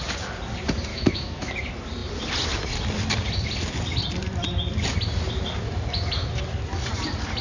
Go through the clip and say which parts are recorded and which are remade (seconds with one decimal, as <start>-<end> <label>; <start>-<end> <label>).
0.0-0.9 recorded; 0.9-1.5 remade; 1.5-7.4 recorded